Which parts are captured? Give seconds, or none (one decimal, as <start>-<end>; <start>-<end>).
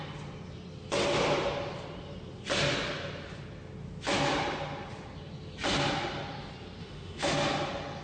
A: 0.0-6.8; 7.3-8.0